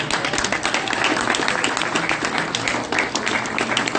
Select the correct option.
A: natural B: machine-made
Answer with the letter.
A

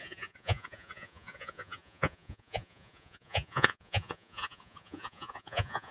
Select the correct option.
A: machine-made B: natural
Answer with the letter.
A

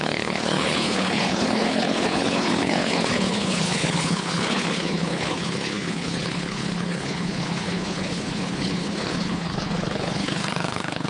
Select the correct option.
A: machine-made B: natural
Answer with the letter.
A